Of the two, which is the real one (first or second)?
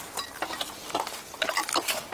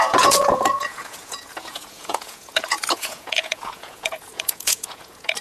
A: first